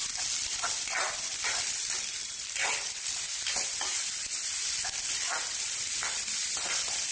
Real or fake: real